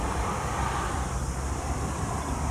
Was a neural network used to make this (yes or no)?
yes